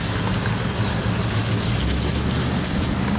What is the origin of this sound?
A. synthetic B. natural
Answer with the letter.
B